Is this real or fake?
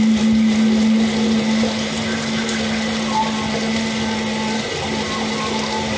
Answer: real